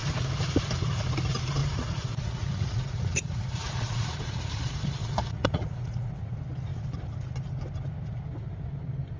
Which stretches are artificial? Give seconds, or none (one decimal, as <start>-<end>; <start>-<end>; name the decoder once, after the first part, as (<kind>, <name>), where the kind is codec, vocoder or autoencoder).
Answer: 1.6-4.5 (vocoder, Vocos); 5.0-6.1